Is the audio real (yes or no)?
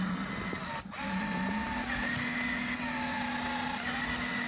yes